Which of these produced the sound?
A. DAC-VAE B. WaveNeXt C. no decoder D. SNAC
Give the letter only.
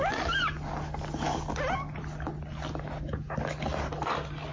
C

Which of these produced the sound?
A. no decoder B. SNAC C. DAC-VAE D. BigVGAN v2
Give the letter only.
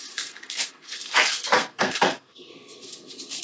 B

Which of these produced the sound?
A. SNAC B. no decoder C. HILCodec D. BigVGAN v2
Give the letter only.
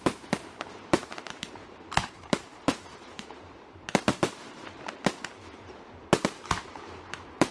D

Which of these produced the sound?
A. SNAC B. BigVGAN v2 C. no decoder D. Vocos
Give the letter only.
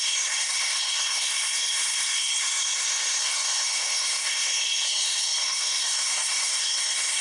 A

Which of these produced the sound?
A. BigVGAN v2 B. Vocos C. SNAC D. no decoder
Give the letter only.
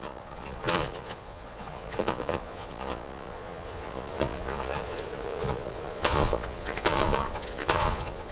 B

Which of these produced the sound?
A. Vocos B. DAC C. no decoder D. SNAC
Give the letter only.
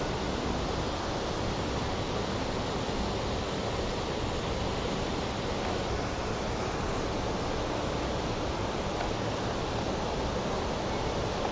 C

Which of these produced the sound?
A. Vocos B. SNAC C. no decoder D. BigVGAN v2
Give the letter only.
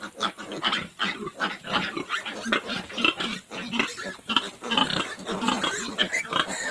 D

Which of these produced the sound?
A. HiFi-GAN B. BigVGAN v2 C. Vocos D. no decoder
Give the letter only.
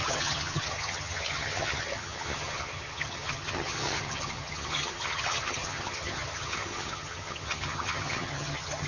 A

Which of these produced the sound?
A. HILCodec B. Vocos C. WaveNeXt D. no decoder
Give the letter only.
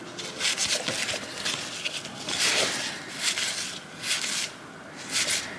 D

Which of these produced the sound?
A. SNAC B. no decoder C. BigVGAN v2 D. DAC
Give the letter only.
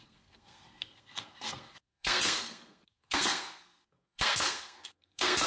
A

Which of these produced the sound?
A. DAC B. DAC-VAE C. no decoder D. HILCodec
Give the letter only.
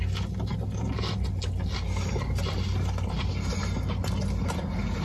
C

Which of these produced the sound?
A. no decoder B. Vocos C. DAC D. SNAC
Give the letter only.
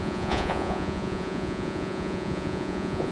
B